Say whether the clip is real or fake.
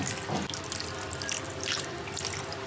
real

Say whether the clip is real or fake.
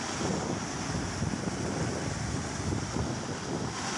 real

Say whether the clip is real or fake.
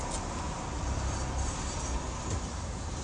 real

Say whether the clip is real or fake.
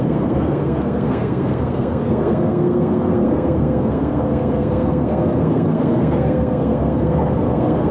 fake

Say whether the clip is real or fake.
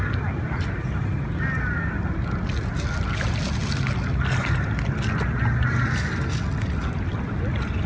real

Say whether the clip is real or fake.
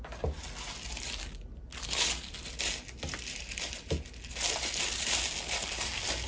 real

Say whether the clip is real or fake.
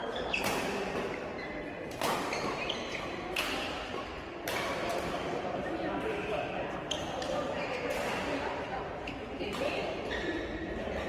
fake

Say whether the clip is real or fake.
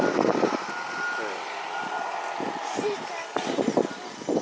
real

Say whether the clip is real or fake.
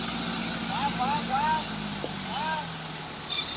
real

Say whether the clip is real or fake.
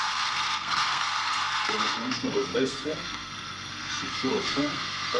fake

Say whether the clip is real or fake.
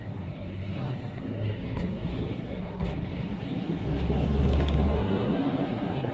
fake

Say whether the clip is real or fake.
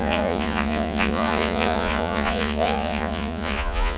fake